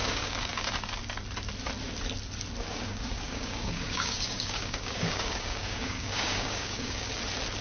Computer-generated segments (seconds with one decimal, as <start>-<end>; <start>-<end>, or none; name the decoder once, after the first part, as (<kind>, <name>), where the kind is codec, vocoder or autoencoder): 0.0-0.7 (codec, DAC); 2.6-7.1